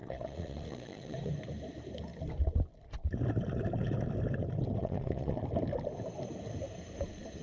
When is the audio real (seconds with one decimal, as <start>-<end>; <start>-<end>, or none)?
1.3-4.8; 5.4-7.4